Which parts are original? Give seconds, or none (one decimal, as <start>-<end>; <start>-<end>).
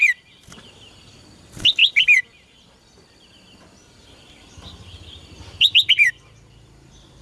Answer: none